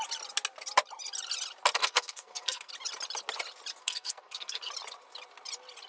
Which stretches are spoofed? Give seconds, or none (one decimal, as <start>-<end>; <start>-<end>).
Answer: 1.8-2.7; 3.8-4.7